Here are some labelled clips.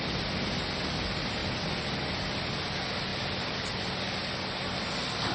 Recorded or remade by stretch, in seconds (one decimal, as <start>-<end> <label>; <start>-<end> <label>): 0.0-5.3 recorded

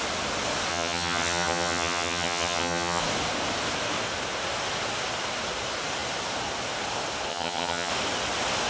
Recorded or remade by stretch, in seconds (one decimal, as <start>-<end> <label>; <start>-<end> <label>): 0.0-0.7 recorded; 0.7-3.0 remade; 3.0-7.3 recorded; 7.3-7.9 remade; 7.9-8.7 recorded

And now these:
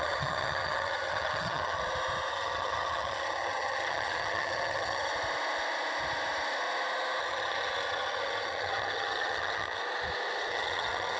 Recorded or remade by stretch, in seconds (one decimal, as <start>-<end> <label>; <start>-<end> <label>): 0.0-1.8 remade; 1.8-2.3 recorded; 2.3-5.1 remade; 5.1-7.2 recorded; 7.2-9.8 remade; 9.8-10.5 recorded; 10.5-11.2 remade

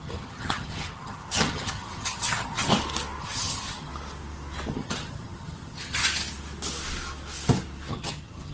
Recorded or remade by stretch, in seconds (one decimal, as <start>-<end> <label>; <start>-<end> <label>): 0.0-2.7 remade; 2.7-3.2 recorded; 3.2-3.9 remade; 3.9-4.7 recorded; 4.7-6.0 remade; 6.0-7.9 recorded; 7.9-8.5 remade

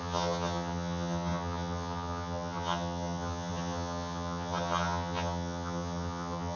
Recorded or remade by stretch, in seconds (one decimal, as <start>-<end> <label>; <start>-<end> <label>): 0.0-6.6 remade

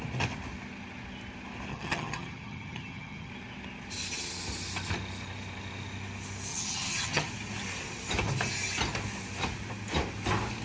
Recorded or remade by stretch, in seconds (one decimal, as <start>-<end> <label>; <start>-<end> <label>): 0.0-1.7 recorded; 1.7-3.3 remade; 3.3-6.5 recorded; 6.5-7.3 remade; 7.3-10.6 recorded

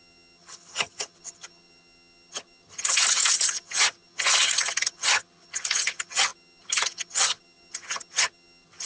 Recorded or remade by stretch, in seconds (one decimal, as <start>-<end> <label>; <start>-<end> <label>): 0.0-8.9 remade

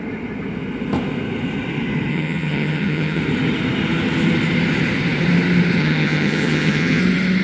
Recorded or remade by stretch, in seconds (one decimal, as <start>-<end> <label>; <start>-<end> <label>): 0.0-2.1 recorded; 2.1-3.2 remade; 3.2-5.8 recorded; 5.8-7.0 remade; 7.0-7.4 recorded